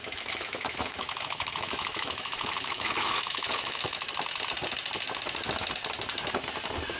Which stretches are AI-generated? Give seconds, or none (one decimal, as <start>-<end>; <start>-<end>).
0.0-4.1